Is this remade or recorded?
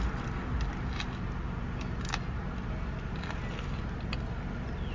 recorded